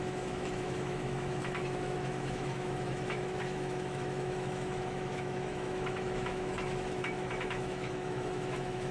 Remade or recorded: remade